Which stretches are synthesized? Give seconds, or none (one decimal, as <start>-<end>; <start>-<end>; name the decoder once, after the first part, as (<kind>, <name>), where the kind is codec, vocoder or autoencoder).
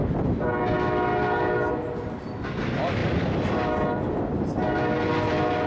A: none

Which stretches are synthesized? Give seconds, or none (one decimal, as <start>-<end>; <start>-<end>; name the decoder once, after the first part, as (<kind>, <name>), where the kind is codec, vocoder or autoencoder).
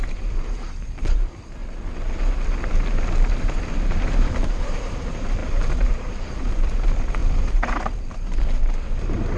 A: 0.0-1.6 (vocoder, BigVGAN v2); 4.4-7.2; 7.7-9.4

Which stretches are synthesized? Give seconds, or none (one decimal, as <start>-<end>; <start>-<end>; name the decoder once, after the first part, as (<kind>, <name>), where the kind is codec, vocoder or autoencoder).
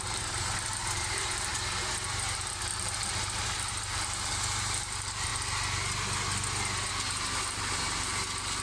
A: 0.0-1.5 (vocoder, BigVGAN v2); 2.1-5.3; 6.9-8.6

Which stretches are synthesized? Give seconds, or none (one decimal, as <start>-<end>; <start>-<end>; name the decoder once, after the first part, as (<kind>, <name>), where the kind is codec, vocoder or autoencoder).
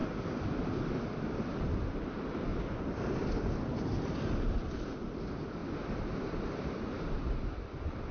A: 1.1-2.5 (vocoder, BigVGAN v2); 3.2-5.6; 6.1-8.1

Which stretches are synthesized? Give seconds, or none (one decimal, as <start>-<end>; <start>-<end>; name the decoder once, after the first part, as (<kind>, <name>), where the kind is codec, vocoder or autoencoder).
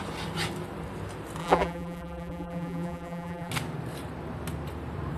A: 1.4-3.5 (vocoder, BigVGAN v2)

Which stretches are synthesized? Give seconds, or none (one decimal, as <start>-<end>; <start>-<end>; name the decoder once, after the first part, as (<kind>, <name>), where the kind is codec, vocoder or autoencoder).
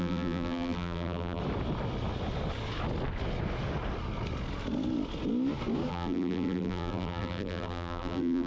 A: 0.0-1.4 (vocoder, BigVGAN v2); 5.9-8.5